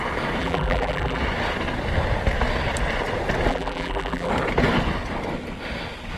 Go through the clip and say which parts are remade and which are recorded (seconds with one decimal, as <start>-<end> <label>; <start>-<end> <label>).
0.0-0.4 recorded; 0.4-1.2 remade; 1.2-3.5 recorded; 3.5-4.3 remade; 4.3-6.2 recorded